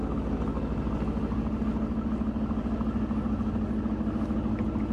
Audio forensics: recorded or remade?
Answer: recorded